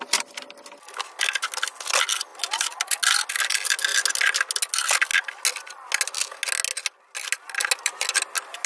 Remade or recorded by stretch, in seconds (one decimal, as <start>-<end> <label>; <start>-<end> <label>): 0.0-8.7 recorded